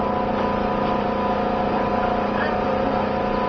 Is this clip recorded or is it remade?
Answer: recorded